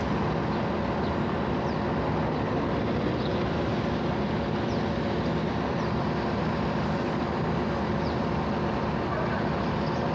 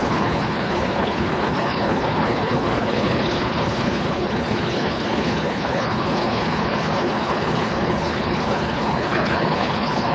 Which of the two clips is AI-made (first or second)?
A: second